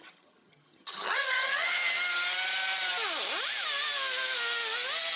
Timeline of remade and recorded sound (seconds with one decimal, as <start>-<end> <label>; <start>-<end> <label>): 0.0-1.8 remade; 1.8-5.2 recorded